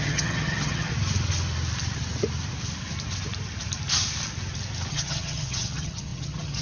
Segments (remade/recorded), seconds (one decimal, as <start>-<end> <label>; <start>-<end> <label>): 0.0-0.9 remade; 0.9-4.9 recorded; 4.9-6.6 remade